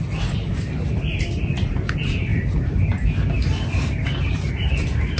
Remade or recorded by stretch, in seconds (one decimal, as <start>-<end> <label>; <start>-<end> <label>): 0.0-5.2 recorded